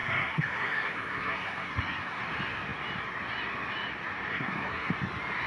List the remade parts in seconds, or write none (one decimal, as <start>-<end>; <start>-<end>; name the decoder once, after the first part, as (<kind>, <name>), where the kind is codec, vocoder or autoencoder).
0.0-2.2 (codec, SNAC); 4.3-4.9